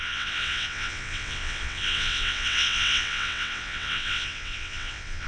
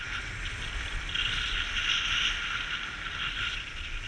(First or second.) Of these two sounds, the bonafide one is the second